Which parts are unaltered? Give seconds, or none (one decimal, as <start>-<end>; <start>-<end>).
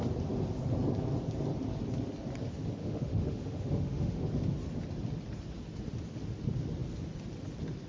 0.0-2.8; 4.2-7.9